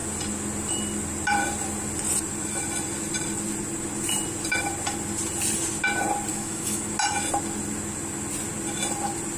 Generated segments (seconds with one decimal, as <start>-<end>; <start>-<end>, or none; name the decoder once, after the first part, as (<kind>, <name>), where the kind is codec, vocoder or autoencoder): 6.3-6.9 (autoencoder, DAC-VAE)